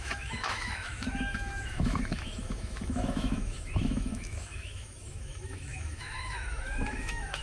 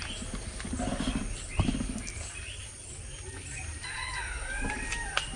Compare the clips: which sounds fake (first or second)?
first